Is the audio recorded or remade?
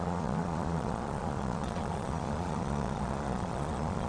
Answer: remade